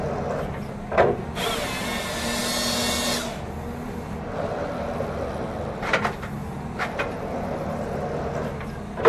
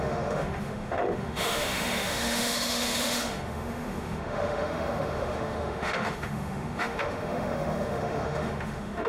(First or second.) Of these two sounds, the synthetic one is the second